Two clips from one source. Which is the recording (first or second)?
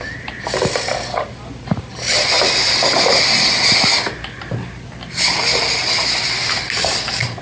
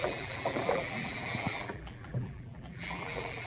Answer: first